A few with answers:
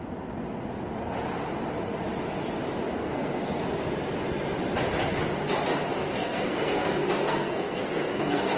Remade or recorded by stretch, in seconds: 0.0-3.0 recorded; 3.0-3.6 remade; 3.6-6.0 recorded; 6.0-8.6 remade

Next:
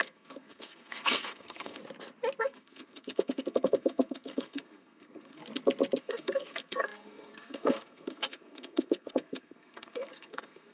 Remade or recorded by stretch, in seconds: 0.0-1.8 remade; 1.8-2.4 recorded; 2.4-5.4 remade; 5.4-6.0 recorded; 6.0-10.7 remade

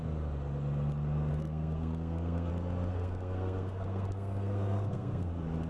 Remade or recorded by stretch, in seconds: 0.0-1.3 recorded; 1.3-2.5 remade; 2.5-2.9 recorded; 2.9-5.3 remade; 5.3-5.7 recorded

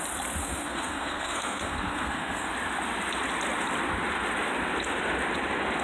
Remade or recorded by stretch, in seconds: 0.0-0.4 recorded; 0.4-2.5 remade; 2.5-5.8 recorded

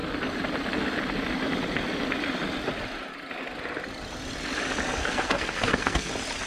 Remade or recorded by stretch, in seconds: 0.0-5.0 recorded; 5.0-6.1 remade; 6.1-6.5 recorded